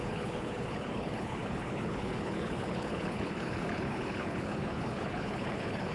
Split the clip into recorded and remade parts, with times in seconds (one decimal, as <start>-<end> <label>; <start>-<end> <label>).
0.0-5.9 remade